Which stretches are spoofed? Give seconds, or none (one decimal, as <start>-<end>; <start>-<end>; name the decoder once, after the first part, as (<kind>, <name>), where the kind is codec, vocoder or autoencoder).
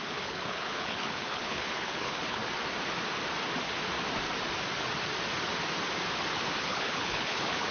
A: 0.0-2.4 (codec, HILCodec); 6.6-7.7